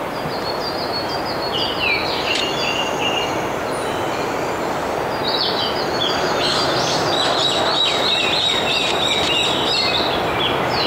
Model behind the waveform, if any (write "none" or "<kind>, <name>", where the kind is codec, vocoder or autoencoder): none